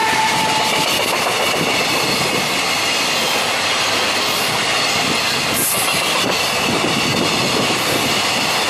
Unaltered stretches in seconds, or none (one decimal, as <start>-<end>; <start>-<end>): 0.0-8.7

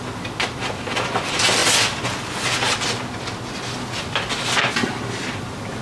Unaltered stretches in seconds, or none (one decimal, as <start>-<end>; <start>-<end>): 0.0-5.8

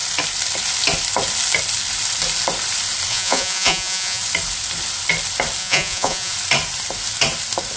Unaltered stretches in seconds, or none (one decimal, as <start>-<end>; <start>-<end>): 0.0-3.1; 4.2-5.6; 6.3-7.8

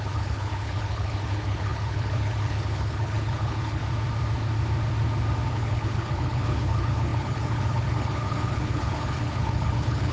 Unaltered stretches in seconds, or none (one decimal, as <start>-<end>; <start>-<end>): 3.8-5.5

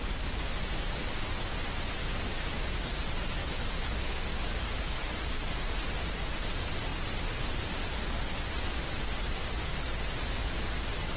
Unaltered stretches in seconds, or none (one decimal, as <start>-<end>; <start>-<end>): 0.0-2.0; 2.9-3.4; 5.1-11.2

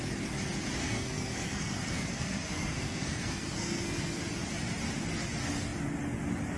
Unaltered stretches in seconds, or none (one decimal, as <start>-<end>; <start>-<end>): 0.0-0.8; 4.2-6.6